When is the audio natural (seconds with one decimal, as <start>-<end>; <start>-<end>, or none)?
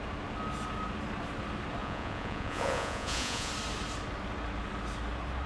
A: 0.0-1.8; 3.5-5.5